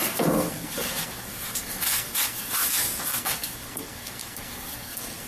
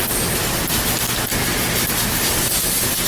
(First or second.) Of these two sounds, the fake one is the first